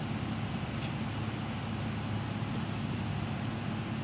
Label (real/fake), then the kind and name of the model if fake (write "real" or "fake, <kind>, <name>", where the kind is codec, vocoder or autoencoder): real